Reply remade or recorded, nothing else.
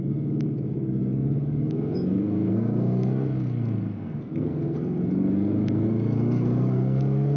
remade